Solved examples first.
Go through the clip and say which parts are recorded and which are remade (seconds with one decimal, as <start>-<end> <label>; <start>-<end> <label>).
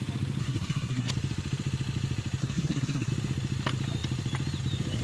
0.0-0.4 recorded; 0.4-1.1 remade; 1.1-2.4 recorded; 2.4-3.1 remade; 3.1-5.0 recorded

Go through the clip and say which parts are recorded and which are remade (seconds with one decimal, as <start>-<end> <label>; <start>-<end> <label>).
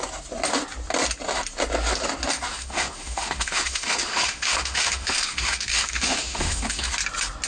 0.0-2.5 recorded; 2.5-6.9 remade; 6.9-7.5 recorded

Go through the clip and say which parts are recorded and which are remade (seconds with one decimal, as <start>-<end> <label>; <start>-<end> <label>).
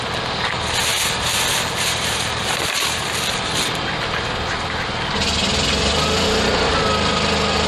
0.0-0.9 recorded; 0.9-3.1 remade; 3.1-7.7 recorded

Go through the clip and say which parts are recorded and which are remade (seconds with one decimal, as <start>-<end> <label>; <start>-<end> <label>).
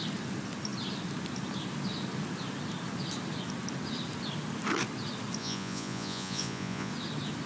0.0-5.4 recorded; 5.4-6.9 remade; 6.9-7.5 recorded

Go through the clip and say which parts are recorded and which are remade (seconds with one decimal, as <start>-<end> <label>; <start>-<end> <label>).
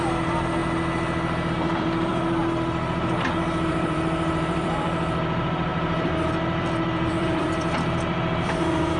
0.0-0.6 remade; 0.6-1.5 recorded; 1.5-2.4 remade; 2.4-3.7 recorded; 3.7-9.0 remade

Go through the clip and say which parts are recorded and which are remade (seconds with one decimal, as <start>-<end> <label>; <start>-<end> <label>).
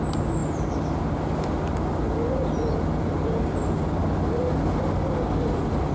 0.0-5.9 recorded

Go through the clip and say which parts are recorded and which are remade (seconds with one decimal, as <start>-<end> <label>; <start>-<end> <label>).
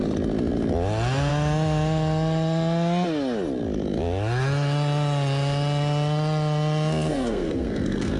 0.0-7.1 recorded; 7.1-8.2 remade